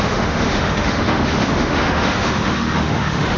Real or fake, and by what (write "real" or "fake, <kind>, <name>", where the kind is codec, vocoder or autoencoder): fake, autoencoder, DAC-VAE